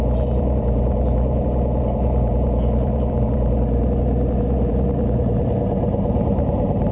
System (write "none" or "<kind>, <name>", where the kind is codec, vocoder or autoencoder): vocoder, BigVGAN v2